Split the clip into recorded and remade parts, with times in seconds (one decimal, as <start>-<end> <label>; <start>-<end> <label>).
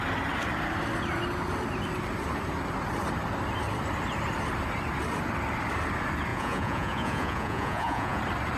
0.0-6.3 recorded; 6.3-8.2 remade; 8.2-8.6 recorded